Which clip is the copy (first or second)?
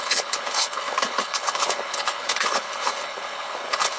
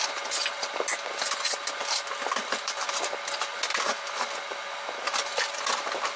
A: first